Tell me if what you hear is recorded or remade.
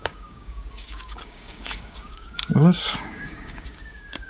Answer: remade